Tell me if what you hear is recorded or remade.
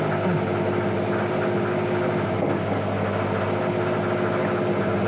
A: recorded